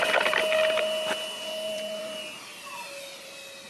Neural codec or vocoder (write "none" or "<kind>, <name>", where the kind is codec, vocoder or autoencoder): vocoder, BigVGAN v2